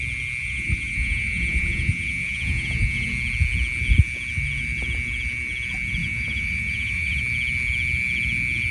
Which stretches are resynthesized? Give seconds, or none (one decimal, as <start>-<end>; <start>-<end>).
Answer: 0.4-3.1; 6.0-7.2